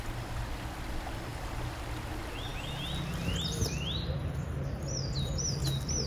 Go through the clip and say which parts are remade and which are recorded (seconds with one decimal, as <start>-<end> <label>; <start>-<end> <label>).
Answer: 0.0-1.3 recorded; 1.3-1.9 remade; 1.9-4.2 recorded; 4.2-5.3 remade; 5.3-6.1 recorded

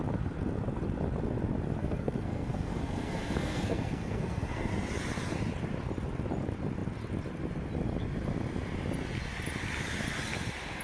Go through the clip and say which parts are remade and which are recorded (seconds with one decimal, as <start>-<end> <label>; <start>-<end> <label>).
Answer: 0.0-1.8 recorded; 1.8-4.7 remade; 4.7-10.8 recorded

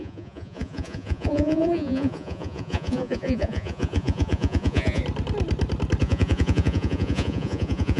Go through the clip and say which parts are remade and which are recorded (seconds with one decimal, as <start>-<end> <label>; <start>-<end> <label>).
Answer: 0.0-5.0 remade; 5.0-6.0 recorded; 6.0-8.0 remade

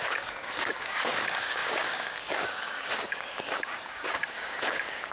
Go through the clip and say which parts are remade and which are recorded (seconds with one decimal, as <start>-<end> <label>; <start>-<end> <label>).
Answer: 0.0-5.1 remade

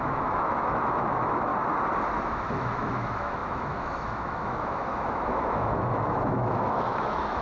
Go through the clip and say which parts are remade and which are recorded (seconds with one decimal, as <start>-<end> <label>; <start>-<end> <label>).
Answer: 0.0-1.5 remade; 1.5-2.3 recorded; 2.3-7.4 remade

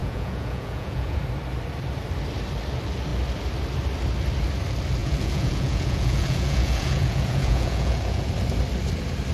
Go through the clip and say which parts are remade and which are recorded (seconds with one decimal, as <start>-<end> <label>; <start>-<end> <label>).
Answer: 0.0-1.2 remade; 1.2-5.0 recorded; 5.0-8.3 remade; 8.3-9.3 recorded

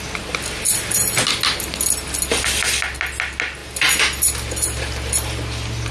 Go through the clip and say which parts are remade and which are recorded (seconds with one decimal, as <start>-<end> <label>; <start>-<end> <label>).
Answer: 0.0-3.6 recorded; 3.6-4.3 remade; 4.3-5.9 recorded

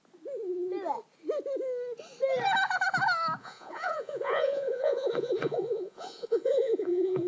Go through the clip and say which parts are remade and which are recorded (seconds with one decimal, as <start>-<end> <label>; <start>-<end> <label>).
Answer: 0.0-3.4 recorded; 3.4-7.3 remade